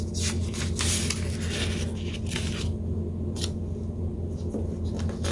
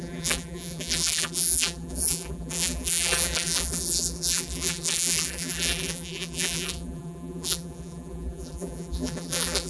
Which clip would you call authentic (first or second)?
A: first